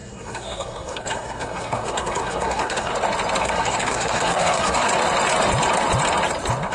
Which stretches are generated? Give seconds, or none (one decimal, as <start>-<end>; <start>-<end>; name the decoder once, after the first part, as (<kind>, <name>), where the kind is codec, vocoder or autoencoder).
0.0-2.9 (codec, SNAC); 3.4-4.9